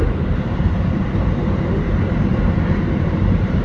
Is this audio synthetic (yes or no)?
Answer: yes